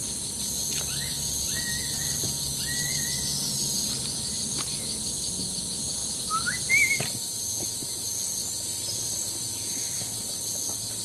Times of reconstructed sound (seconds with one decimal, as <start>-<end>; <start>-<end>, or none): 6.0-7.7; 8.4-10.5